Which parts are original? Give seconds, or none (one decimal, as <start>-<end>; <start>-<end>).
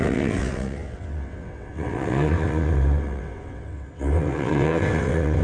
none